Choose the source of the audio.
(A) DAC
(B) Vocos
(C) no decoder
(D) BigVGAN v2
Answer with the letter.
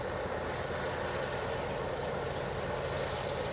C